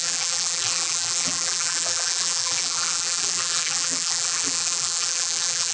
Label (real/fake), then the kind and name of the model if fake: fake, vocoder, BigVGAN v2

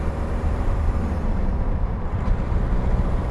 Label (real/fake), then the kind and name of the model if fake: fake, vocoder, BigVGAN v2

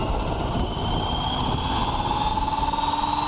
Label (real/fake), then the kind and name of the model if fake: real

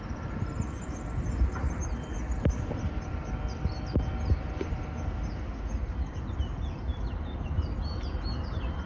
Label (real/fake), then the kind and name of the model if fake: real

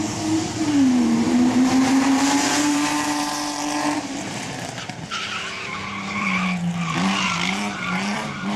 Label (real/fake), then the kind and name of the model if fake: fake, vocoder, BigVGAN v2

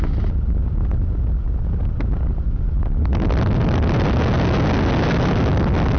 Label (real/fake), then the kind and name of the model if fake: real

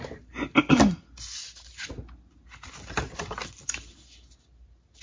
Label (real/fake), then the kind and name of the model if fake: real